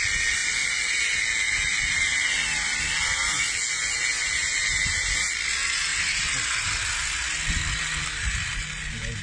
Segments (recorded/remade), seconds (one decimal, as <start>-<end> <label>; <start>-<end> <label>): 0.0-9.2 recorded